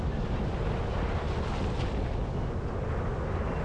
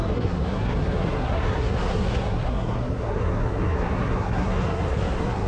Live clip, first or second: first